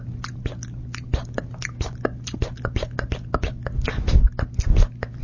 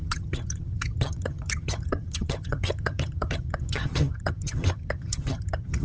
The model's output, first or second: second